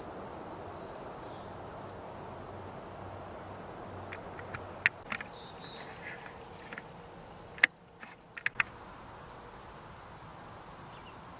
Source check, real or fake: real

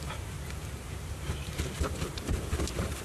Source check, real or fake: fake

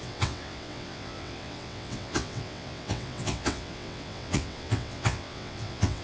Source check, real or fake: fake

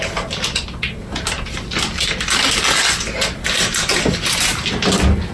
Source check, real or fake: real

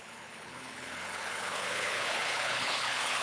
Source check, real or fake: fake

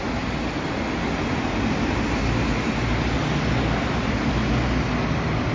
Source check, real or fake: real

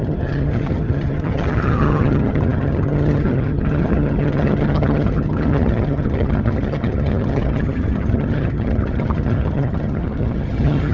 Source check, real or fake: fake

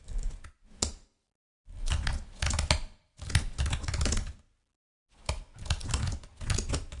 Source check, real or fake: real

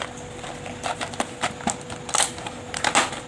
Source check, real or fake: real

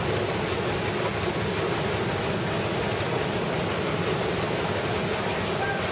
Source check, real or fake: real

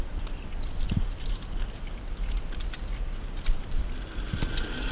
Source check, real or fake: real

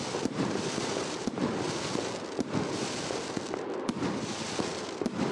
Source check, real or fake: fake